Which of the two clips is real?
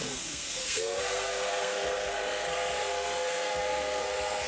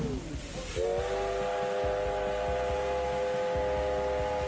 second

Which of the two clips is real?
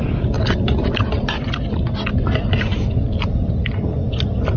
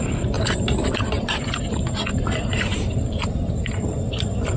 first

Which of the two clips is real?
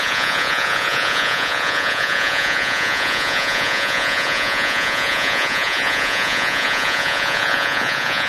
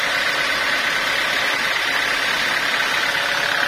second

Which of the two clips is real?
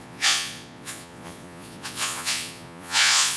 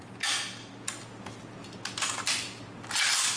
second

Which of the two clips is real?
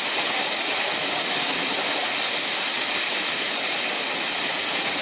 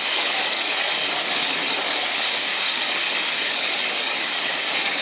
first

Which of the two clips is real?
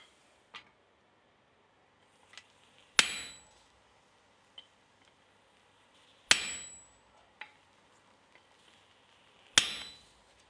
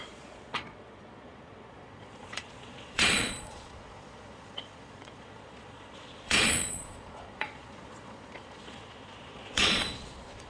first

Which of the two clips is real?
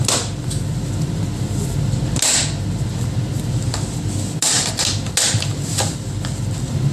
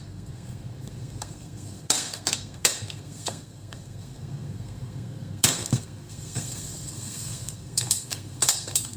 first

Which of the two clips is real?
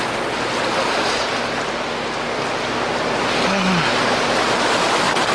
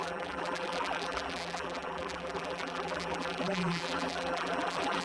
first